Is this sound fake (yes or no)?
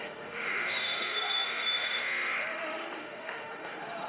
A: yes